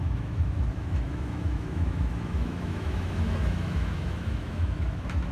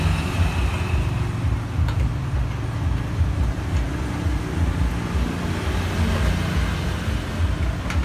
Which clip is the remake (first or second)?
first